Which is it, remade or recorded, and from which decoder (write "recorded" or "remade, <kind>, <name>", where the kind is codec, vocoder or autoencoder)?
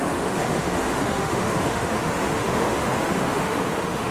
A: remade, autoencoder, DAC-VAE